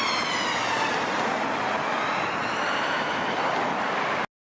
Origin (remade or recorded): recorded